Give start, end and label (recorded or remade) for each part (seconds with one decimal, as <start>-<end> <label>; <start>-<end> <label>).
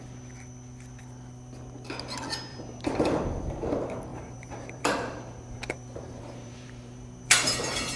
0.0-2.5 recorded; 2.5-3.1 remade; 3.1-4.1 recorded; 4.1-8.0 remade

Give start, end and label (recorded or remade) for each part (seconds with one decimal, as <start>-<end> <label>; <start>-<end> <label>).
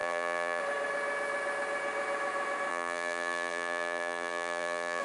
0.0-0.6 remade; 0.6-2.7 recorded; 2.7-5.0 remade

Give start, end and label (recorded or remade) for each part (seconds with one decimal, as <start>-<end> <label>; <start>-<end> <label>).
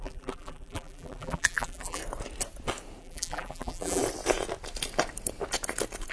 0.0-2.0 remade; 2.0-3.0 recorded; 3.0-4.0 remade; 4.0-6.1 recorded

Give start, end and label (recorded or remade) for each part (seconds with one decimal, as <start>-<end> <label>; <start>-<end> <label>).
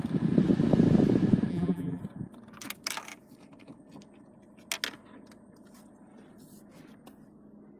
0.0-1.5 recorded; 1.5-2.0 remade; 2.0-7.8 recorded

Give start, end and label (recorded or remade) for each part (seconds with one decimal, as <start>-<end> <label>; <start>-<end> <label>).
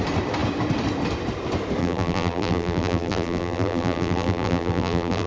0.0-1.8 recorded; 1.8-5.3 remade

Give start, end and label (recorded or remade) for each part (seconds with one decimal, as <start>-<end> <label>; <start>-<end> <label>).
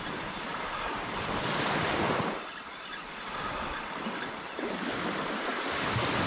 0.0-0.5 recorded; 0.5-3.1 remade; 3.1-5.5 recorded; 5.5-6.3 remade